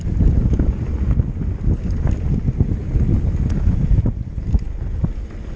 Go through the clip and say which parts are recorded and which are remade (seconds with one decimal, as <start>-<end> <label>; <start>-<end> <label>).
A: 0.0-0.9 remade; 0.9-1.6 recorded; 1.6-2.8 remade; 2.8-5.6 recorded